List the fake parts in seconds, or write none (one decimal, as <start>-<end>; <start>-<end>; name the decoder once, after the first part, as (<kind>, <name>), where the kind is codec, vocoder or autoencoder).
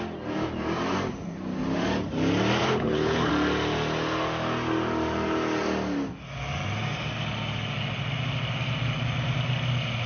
2.6-3.3 (codec, HILCodec)